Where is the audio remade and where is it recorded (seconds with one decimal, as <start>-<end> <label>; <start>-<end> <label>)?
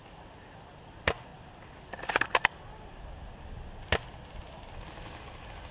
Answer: 0.0-5.7 recorded